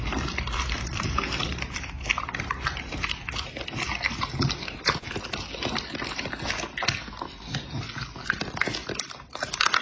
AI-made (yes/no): no